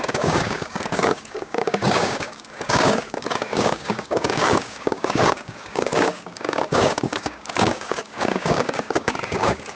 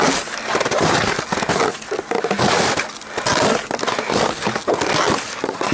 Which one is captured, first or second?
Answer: second